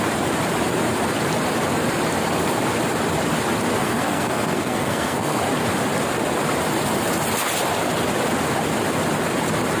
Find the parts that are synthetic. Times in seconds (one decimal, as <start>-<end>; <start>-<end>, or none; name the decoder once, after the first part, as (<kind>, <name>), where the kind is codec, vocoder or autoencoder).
3.8-5.4 (codec, SNAC)